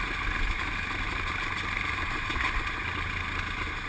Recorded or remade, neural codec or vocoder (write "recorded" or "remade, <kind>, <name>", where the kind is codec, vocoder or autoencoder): recorded